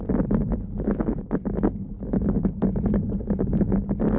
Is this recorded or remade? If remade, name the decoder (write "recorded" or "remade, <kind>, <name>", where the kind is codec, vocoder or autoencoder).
recorded